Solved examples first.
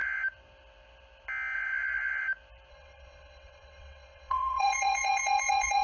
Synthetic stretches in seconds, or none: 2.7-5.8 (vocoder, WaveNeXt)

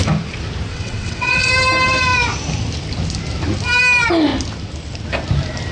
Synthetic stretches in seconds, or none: 0.7-1.5 (vocoder, WaveNeXt)

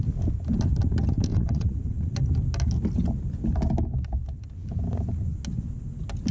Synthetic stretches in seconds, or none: 1.3-2.2 (vocoder, WaveNeXt)

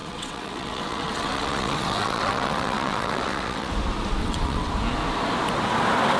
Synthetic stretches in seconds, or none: 0.0-3.7 (vocoder, WaveNeXt); 4.2-4.7

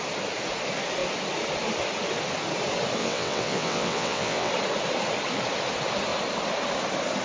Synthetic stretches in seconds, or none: 3.0-4.5 (vocoder, WaveNeXt)

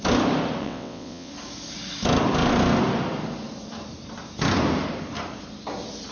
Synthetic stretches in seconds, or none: 0.6-1.3 (vocoder, WaveNeXt)

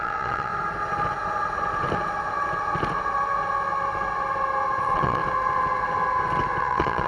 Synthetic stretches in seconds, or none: 0.0-0.5 (vocoder, WaveNeXt); 4.8-5.2; 6.6-7.1